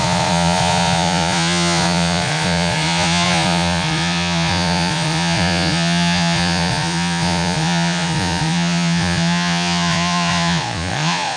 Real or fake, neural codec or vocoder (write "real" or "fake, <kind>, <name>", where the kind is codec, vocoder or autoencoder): fake, vocoder, Vocos